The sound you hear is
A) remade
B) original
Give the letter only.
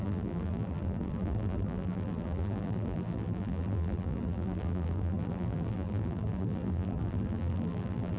A